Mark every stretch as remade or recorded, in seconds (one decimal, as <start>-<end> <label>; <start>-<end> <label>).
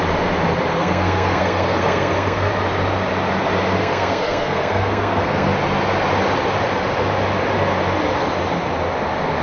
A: 0.0-0.7 recorded; 0.7-2.5 remade; 2.5-3.8 recorded; 3.8-5.5 remade; 5.5-9.4 recorded